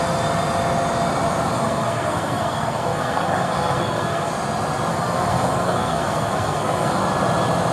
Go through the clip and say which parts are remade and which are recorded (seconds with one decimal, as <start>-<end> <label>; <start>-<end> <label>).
0.0-1.5 recorded; 1.5-4.3 remade; 4.3-4.9 recorded; 4.9-7.0 remade; 7.0-7.7 recorded